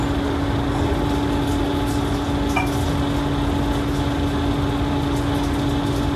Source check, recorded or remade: recorded